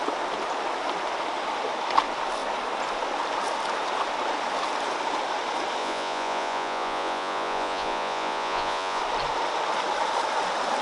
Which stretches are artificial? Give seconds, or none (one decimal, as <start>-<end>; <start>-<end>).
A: 5.8-9.0